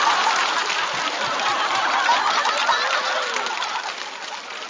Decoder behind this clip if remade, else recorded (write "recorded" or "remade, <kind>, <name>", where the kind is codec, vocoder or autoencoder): recorded